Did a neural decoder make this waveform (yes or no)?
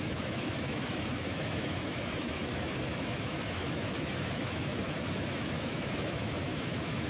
yes